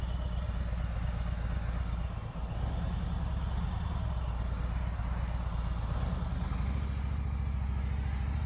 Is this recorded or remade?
recorded